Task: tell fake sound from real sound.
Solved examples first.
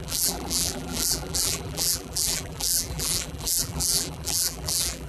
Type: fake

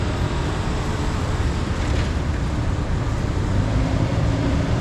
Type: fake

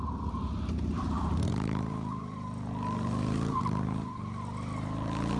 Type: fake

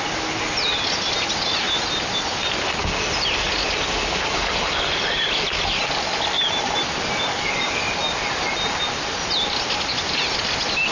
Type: real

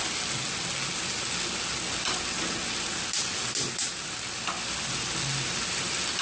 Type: real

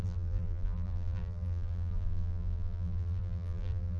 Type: fake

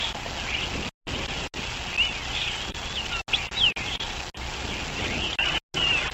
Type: real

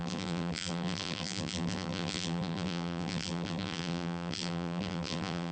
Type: fake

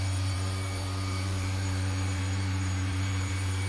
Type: fake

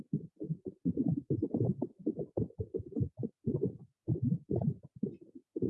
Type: fake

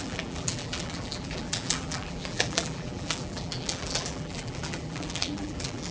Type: fake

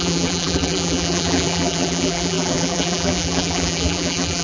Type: fake